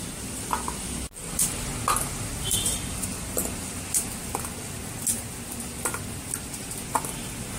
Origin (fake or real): real